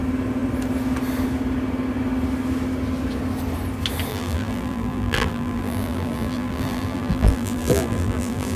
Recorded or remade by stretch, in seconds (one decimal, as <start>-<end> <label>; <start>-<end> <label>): 0.0-4.1 recorded; 4.1-8.6 remade